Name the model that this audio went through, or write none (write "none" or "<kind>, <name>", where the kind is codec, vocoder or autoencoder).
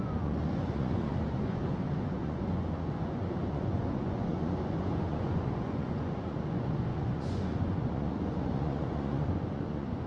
vocoder, Vocos